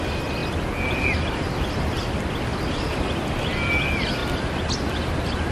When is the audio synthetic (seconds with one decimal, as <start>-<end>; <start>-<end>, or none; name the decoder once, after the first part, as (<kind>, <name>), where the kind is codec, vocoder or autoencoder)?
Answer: none